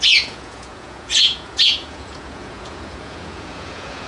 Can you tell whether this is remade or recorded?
remade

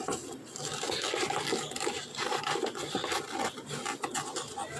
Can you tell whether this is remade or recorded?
remade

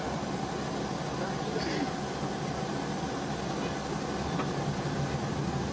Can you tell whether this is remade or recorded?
recorded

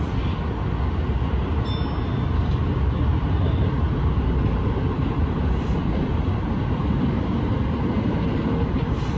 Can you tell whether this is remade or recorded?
recorded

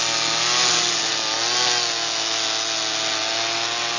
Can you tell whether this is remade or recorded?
recorded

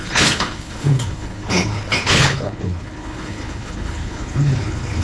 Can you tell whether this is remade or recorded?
remade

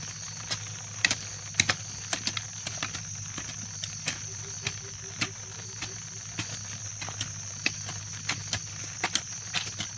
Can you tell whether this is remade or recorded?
recorded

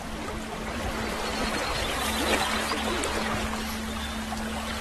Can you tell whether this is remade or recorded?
recorded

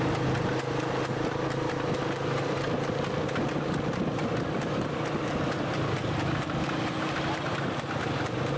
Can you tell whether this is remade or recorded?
remade